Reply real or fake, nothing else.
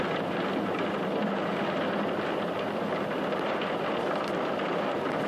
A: real